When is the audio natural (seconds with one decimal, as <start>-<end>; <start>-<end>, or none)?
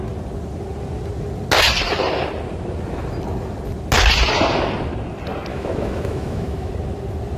0.0-5.5; 6.7-7.4